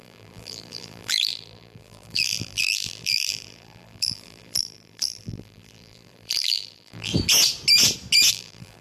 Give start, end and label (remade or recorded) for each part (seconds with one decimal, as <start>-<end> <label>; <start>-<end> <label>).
0.0-7.1 remade; 7.1-8.3 recorded; 8.3-8.8 remade